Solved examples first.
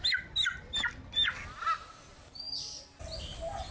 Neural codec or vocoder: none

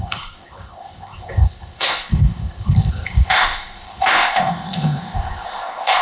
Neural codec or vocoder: codec, ZipCodec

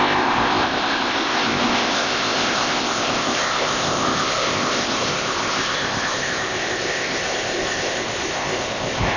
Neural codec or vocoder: codec, ZipCodec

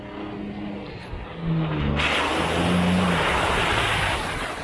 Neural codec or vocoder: none